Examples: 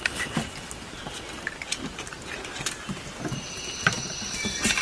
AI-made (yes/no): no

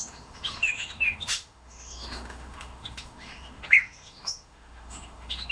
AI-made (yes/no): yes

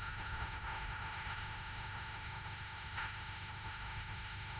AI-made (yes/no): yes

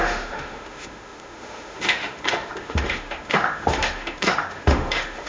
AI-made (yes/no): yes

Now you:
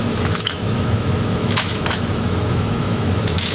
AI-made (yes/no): yes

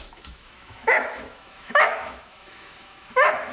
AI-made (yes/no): yes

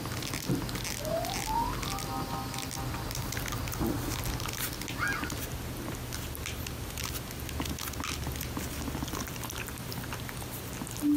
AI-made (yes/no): no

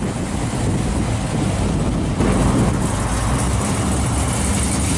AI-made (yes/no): no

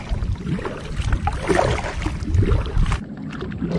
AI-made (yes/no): no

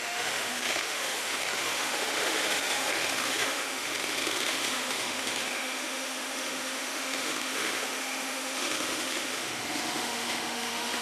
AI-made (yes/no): yes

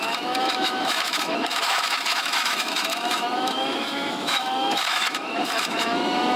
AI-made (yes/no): yes